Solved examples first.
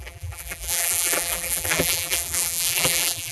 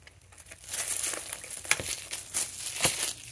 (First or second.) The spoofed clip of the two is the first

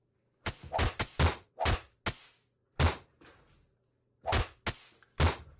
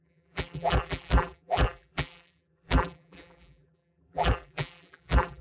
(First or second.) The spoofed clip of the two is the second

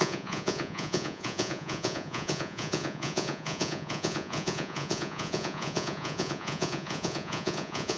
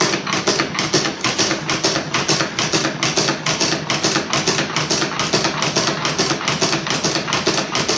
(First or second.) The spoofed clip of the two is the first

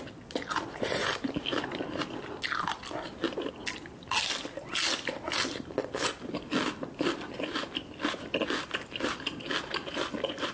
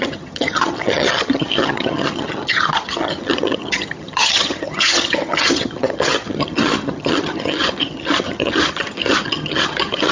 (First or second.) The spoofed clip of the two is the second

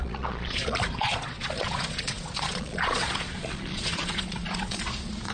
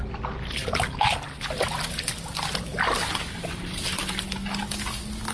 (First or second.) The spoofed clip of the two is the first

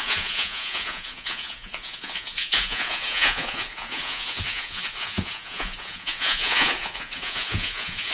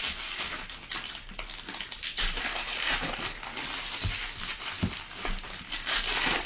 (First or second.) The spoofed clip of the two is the first